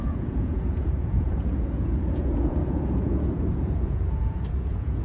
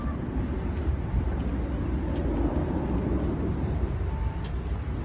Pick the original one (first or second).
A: second